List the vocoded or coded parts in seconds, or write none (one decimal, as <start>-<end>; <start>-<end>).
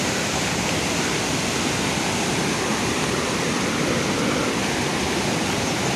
none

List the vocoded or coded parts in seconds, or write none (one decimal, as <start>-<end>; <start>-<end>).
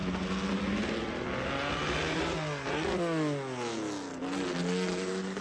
none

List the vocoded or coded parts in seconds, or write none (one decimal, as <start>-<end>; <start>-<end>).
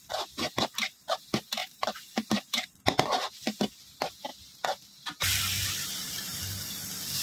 1.6-2.7; 4.3-6.4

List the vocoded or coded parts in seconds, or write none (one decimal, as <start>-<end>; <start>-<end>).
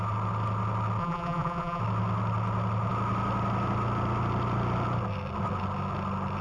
1.0-1.8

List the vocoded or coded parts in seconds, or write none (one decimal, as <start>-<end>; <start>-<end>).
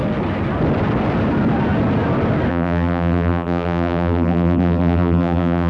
2.5-5.7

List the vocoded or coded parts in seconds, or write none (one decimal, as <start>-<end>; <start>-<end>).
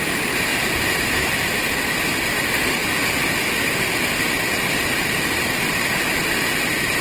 0.5-1.6; 2.8-7.0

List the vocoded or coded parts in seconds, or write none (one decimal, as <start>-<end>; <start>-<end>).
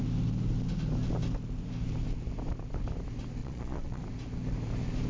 3.4-4.0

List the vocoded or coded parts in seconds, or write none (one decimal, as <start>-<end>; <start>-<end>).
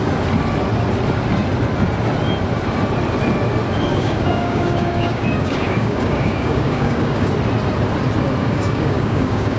3.9-7.3; 8.4-9.6